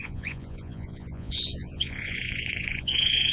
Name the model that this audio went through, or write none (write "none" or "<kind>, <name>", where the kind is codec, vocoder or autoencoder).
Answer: vocoder, Vocos